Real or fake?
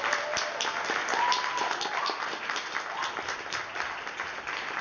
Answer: real